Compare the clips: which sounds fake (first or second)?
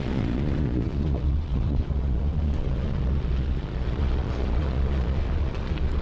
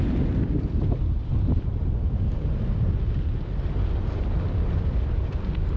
first